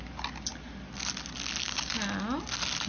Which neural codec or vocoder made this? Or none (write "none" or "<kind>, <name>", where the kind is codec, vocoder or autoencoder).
none